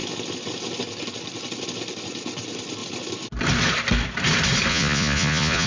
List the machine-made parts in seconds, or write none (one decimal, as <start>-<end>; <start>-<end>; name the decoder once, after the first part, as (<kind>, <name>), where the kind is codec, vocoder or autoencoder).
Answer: 4.7-5.7 (vocoder, Vocos)